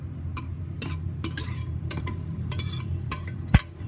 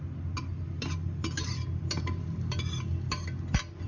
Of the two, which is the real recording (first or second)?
second